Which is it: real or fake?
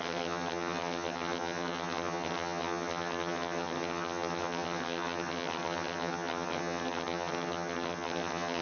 fake